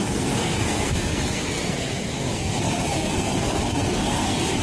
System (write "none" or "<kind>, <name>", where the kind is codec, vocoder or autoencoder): codec, SNAC